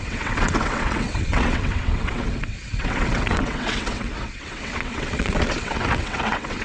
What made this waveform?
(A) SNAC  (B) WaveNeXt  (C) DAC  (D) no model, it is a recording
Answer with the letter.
B